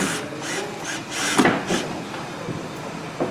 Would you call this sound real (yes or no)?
yes